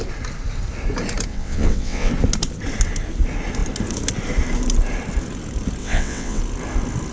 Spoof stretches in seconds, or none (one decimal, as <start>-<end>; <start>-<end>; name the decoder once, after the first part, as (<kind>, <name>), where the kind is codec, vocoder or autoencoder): 1.3-2.1 (vocoder, WaveNeXt); 5.8-6.4